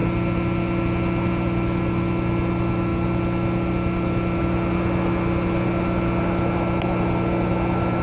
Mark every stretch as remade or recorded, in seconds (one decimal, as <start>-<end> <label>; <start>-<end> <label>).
0.0-8.0 recorded